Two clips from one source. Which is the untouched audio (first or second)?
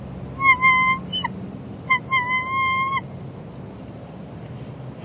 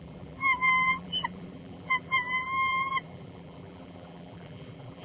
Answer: first